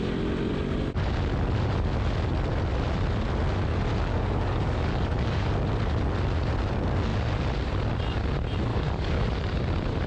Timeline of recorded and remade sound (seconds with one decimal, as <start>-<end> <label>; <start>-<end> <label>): 0.0-4.1 recorded; 4.1-5.5 remade; 5.5-8.7 recorded; 8.7-9.5 remade; 9.5-10.1 recorded